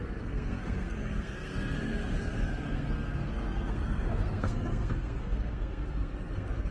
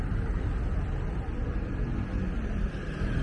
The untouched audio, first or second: second